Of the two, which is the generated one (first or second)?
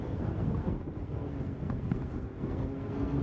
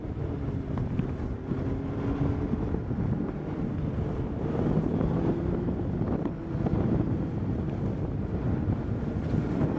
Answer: first